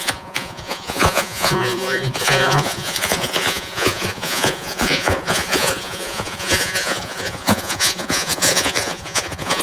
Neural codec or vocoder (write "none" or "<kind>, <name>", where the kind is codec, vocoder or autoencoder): vocoder, Vocos